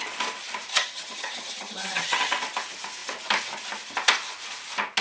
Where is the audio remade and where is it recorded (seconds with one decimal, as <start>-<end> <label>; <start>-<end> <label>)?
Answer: 0.0-0.7 recorded; 0.7-2.3 remade; 2.3-5.0 recorded